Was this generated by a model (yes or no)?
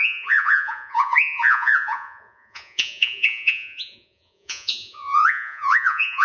yes